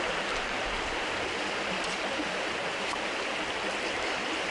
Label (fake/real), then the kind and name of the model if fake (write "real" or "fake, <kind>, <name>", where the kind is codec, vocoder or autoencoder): real